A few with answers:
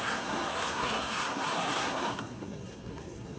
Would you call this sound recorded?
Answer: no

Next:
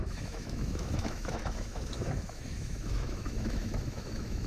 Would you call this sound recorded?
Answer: no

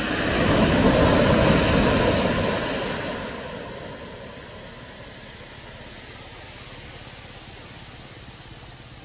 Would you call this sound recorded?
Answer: yes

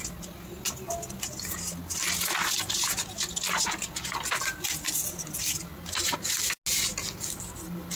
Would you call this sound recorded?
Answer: yes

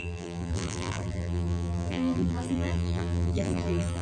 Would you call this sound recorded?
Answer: no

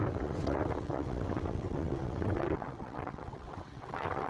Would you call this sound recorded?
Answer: no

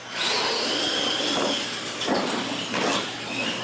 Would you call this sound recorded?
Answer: yes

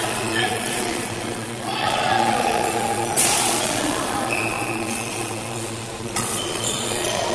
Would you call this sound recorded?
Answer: no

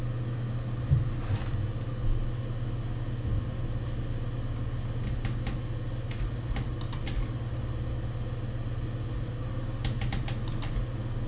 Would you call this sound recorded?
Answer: yes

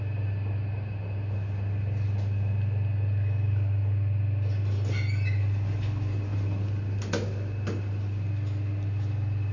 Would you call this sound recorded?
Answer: yes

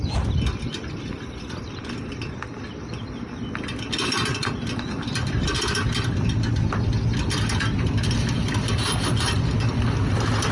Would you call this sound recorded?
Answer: yes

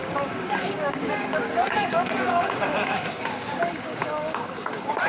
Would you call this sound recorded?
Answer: no